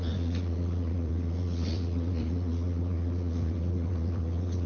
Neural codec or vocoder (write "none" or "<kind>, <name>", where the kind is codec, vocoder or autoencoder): vocoder, Vocos